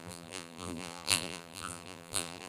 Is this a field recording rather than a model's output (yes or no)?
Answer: no